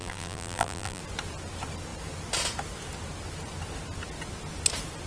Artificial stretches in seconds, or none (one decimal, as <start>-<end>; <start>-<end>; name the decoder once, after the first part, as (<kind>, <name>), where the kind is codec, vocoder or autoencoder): 0.0-1.0 (vocoder, BigVGAN v2)